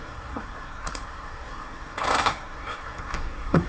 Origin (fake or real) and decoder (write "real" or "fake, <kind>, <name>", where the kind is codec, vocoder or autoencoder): fake, codec, SNAC